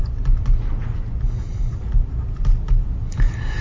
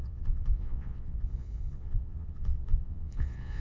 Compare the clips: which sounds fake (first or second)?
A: second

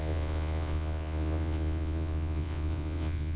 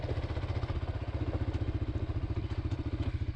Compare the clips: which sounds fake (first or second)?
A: first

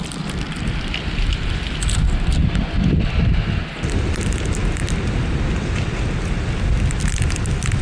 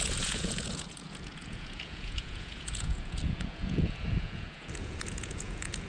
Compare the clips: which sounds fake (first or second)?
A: second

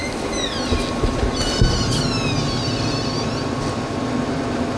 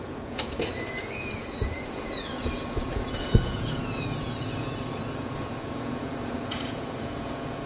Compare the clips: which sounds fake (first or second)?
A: second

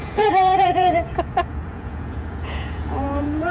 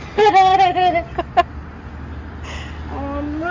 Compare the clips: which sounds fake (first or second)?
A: first